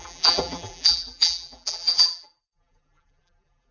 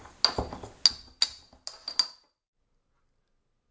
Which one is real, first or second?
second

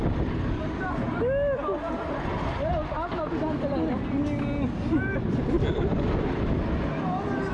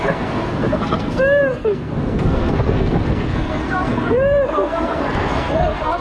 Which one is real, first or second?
first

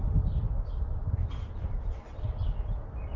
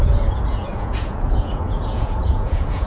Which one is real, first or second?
first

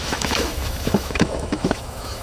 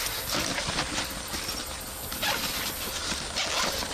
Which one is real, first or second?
second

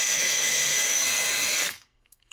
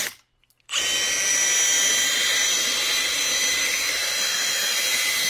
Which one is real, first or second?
second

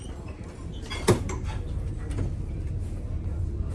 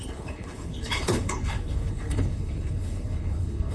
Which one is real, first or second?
first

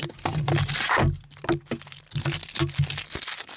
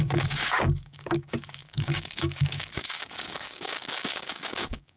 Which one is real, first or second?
first